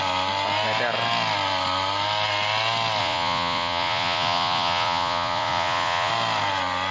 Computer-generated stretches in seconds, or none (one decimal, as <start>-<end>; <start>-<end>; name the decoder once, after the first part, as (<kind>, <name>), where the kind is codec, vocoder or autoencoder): 3.0-6.1 (vocoder, Vocos)